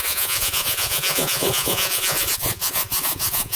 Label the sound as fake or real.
fake